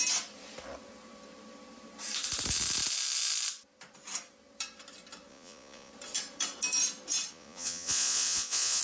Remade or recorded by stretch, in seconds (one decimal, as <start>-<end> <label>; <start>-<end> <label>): 0.0-5.3 recorded; 5.3-5.9 remade; 5.9-7.3 recorded; 7.3-8.8 remade